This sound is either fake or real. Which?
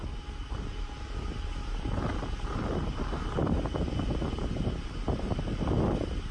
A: real